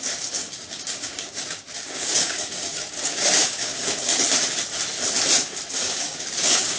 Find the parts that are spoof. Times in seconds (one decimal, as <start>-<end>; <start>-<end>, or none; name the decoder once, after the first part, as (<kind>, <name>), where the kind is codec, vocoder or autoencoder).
0.0-4.1 (codec, DAC); 5.7-6.8